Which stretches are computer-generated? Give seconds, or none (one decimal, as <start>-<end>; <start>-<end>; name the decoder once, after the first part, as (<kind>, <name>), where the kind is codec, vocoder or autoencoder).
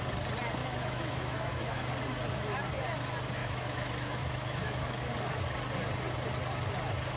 0.6-1.9 (autoencoder, DAC-VAE); 3.4-5.1